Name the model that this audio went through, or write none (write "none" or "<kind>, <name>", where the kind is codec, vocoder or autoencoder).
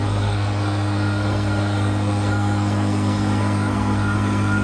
codec, SNAC